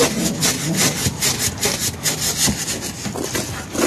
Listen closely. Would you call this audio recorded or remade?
recorded